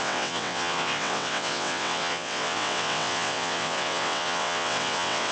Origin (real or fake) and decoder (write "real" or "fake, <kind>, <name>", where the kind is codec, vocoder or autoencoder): fake, vocoder, WaveNeXt